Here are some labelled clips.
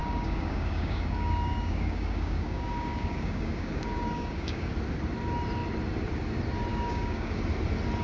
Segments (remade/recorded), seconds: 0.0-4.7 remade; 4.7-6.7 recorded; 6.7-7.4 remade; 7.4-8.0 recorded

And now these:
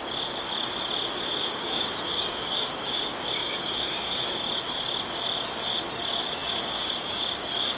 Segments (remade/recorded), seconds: 0.0-1.4 recorded; 1.4-3.0 remade; 3.0-3.4 recorded; 3.4-4.3 remade; 4.3-6.4 recorded; 6.4-7.2 remade; 7.2-7.8 recorded

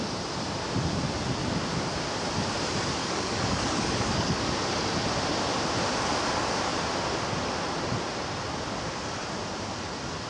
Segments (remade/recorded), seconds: 0.0-3.0 recorded; 3.0-4.5 remade; 4.5-10.3 recorded

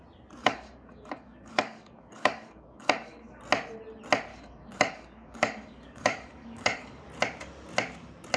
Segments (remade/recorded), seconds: 0.0-0.4 recorded; 0.4-3.4 remade; 3.4-4.3 recorded; 4.3-7.0 remade; 7.0-8.4 recorded

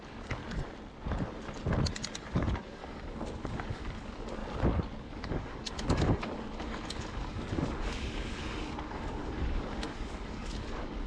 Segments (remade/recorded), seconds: 0.0-0.4 remade; 0.4-2.3 recorded; 2.3-4.4 remade; 4.4-5.0 recorded; 5.0-11.1 remade